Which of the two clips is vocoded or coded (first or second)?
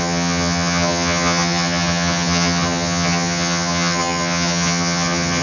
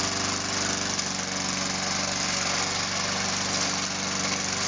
first